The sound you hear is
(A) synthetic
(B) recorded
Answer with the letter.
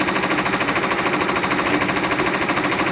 B